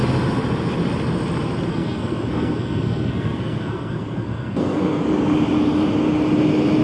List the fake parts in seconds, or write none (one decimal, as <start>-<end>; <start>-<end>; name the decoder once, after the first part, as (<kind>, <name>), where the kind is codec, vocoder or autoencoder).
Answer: 1.7-5.0 (codec, SNAC)